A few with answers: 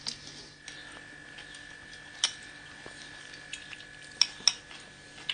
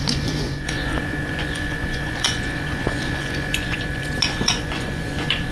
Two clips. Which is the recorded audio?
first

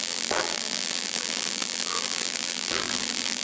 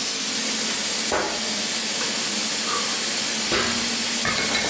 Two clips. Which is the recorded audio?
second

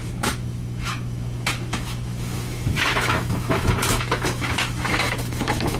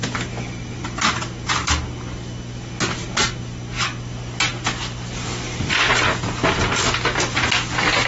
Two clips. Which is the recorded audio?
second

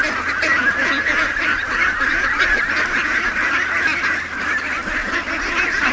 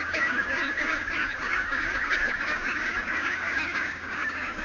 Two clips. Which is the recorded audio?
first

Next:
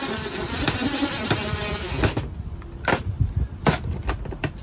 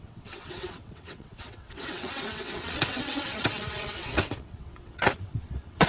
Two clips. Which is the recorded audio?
first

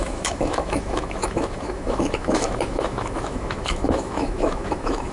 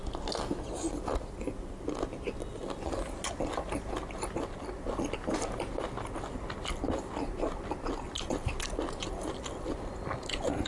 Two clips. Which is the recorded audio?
second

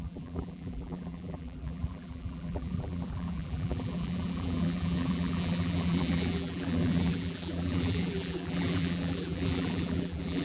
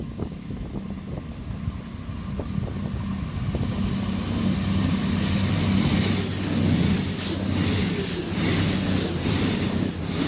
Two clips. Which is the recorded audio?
second